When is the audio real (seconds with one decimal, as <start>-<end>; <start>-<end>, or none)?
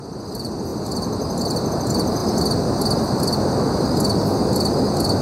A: 0.0-5.2